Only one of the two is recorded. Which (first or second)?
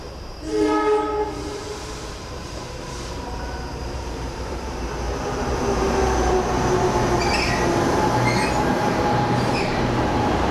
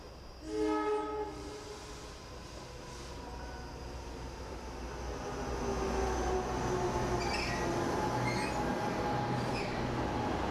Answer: second